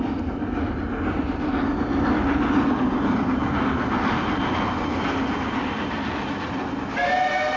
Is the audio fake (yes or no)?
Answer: no